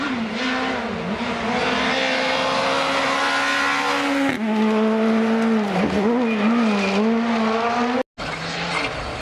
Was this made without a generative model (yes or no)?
yes